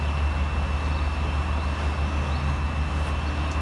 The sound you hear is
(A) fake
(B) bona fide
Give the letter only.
B